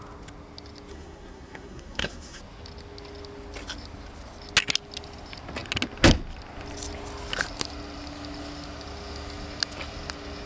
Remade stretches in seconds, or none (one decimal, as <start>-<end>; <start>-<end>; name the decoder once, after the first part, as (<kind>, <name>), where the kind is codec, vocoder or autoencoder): 0.9-2.4 (codec, SNAC)